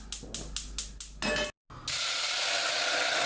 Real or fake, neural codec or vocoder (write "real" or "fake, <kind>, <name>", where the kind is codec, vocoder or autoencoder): real